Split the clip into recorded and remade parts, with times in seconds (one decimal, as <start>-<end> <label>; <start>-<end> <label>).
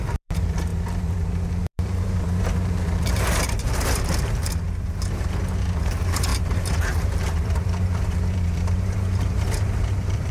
0.0-10.3 remade